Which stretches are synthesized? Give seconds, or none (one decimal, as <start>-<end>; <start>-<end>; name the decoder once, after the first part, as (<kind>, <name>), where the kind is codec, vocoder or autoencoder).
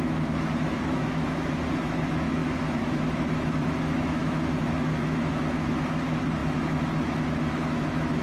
0.0-8.2 (autoencoder, DAC-VAE)